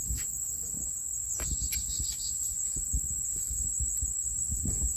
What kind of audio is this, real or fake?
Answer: fake